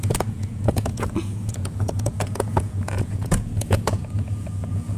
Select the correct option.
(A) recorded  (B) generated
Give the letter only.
B